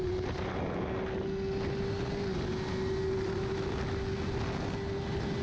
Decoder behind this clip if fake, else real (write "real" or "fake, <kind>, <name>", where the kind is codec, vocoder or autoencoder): real